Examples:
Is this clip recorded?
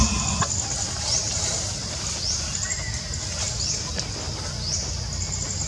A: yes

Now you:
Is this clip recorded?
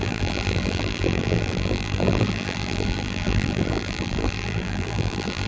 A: no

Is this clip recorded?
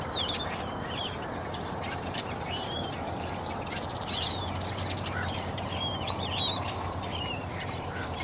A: no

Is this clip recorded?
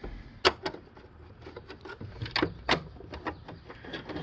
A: yes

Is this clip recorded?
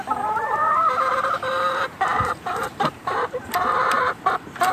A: no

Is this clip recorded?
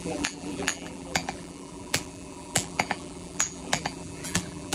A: no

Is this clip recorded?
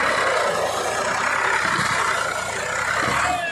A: yes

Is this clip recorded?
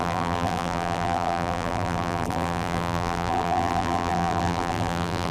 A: no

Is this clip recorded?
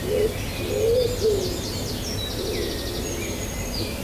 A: yes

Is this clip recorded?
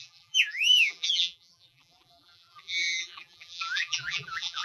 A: no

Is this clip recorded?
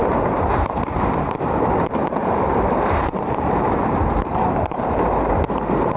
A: no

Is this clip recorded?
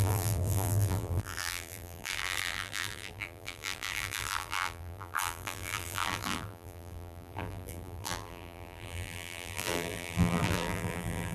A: no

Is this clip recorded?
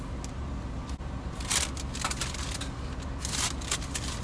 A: yes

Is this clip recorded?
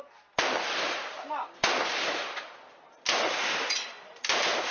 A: yes